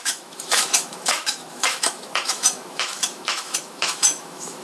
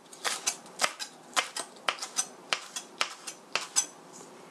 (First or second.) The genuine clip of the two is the second